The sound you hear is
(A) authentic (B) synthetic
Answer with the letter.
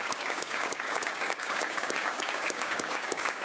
B